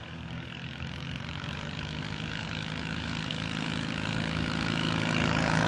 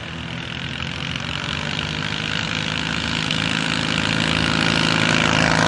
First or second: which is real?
second